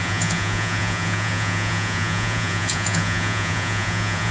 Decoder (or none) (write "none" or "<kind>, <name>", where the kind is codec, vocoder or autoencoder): vocoder, Vocos